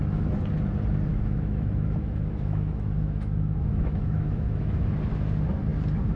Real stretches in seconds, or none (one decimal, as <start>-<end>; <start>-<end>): 0.0-1.1; 4.8-6.2